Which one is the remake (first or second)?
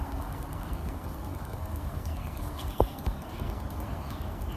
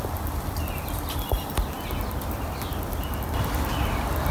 first